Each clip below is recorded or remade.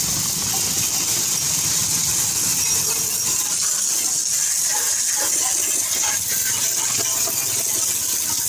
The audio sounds recorded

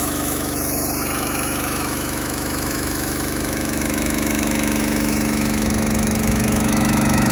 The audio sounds remade